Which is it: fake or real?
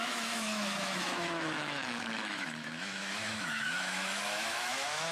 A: fake